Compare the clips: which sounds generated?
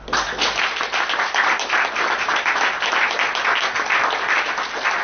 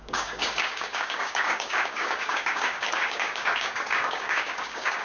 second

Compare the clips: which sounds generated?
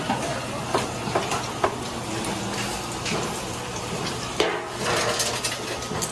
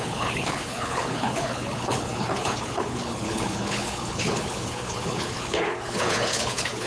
second